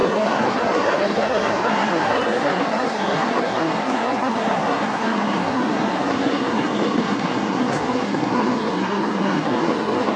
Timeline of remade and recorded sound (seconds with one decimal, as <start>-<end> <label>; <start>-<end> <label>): 0.0-10.2 remade